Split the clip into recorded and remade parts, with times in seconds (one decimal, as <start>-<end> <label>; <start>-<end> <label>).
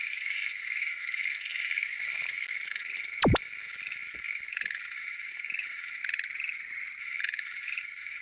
0.0-6.0 remade; 6.0-7.0 recorded; 7.0-8.2 remade